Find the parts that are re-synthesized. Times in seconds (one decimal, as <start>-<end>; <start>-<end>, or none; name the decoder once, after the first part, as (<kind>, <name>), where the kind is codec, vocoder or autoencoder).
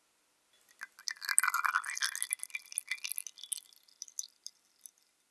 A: none